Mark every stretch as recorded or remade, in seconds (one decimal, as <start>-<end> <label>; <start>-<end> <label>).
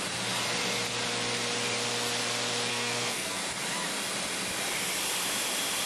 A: 0.0-2.7 recorded; 2.7-3.4 remade; 3.4-5.9 recorded